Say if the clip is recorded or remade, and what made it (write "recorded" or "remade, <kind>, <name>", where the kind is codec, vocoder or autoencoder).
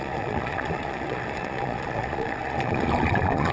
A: remade, vocoder, Vocos